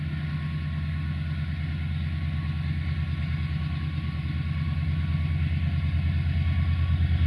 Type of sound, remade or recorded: recorded